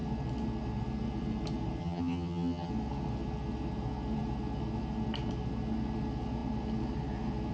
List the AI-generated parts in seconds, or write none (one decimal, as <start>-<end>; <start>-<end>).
1.8-2.7